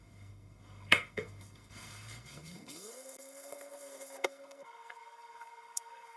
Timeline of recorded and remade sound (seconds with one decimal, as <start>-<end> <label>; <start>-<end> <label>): 0.0-6.2 remade